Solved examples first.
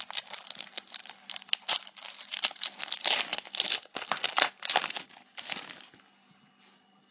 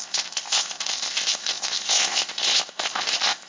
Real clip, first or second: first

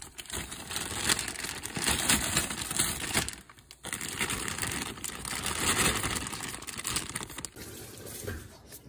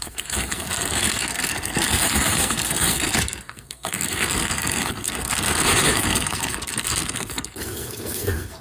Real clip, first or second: first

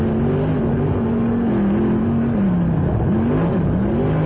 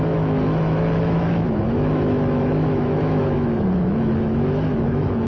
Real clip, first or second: first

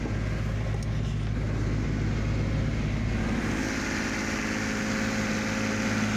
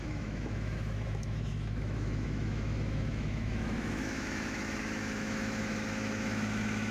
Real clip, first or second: first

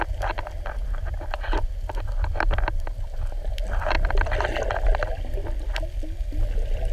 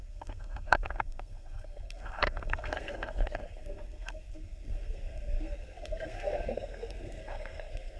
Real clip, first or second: first